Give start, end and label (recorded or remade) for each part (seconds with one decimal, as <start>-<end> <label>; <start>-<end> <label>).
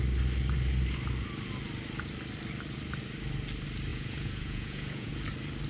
0.0-3.9 recorded; 3.9-5.1 remade; 5.1-5.7 recorded